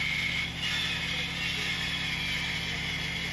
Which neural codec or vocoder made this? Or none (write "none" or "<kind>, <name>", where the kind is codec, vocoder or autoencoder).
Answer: none